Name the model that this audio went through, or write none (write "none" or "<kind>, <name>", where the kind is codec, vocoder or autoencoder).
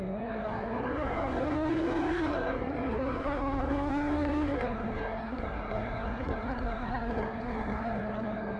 codec, SNAC